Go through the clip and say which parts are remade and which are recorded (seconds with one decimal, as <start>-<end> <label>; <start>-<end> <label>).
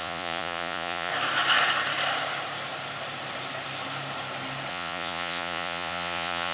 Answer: 0.0-1.1 remade; 1.1-4.7 recorded; 4.7-6.5 remade